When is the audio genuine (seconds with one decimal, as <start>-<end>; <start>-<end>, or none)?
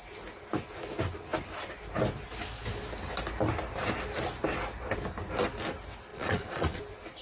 0.0-6.1; 6.8-7.2